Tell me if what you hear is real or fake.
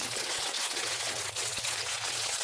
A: fake